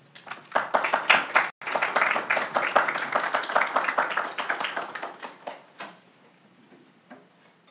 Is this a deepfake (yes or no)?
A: no